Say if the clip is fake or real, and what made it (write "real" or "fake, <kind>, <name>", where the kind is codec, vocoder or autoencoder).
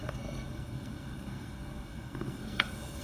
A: fake, codec, SNAC